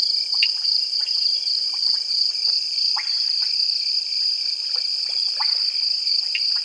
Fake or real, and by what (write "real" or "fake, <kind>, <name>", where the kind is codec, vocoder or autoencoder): real